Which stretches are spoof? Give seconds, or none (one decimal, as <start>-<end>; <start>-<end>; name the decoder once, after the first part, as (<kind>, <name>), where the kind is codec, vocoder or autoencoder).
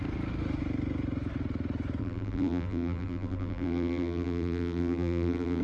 2.0-5.6 (vocoder, BigVGAN v2)